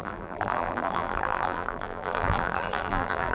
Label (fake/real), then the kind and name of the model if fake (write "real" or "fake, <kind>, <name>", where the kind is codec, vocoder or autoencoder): fake, vocoder, BigVGAN v2